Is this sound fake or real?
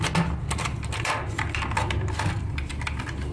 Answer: real